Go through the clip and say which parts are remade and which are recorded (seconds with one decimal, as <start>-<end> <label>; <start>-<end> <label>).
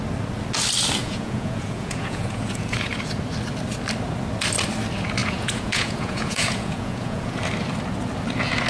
0.0-1.0 recorded; 1.0-2.9 remade; 2.9-5.2 recorded; 5.2-7.4 remade; 7.4-8.7 recorded